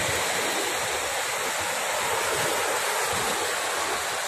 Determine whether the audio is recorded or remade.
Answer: recorded